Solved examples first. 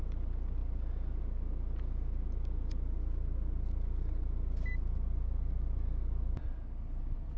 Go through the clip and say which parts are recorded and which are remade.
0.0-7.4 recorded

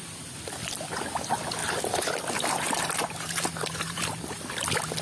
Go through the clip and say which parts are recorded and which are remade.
0.0-0.6 remade; 0.6-1.6 recorded; 1.6-4.6 remade; 4.6-5.0 recorded

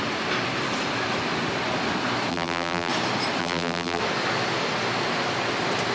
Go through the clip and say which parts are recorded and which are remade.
0.0-2.3 recorded; 2.3-2.9 remade; 2.9-3.4 recorded; 3.4-4.0 remade; 4.0-5.9 recorded